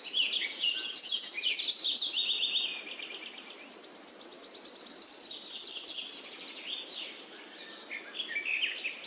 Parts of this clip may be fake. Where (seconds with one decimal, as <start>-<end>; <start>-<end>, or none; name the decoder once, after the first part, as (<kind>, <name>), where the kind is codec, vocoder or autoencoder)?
0.4-1.3 (vocoder, Vocos)